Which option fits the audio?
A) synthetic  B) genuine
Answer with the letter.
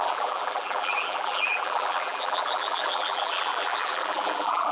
A